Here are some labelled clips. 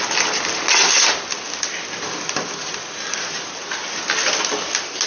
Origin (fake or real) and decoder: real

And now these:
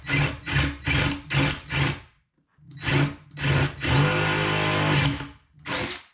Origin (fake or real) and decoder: real